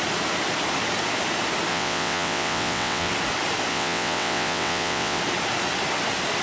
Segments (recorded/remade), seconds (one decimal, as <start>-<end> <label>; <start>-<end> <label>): 0.0-1.7 recorded; 1.7-3.1 remade; 3.1-3.7 recorded; 3.7-5.2 remade; 5.2-6.4 recorded